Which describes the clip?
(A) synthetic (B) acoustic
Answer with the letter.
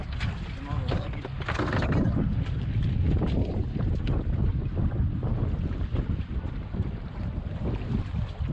B